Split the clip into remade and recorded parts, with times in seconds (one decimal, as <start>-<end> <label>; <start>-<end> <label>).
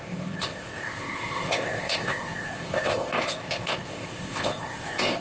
0.0-5.2 remade